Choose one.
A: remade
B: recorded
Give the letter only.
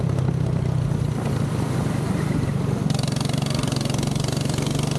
B